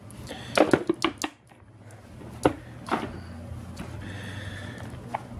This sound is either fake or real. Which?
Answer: real